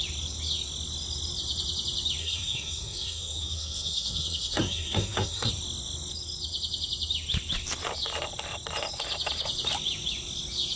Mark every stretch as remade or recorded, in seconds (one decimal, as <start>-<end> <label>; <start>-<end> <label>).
0.0-2.2 recorded; 2.2-5.5 remade; 5.5-10.8 recorded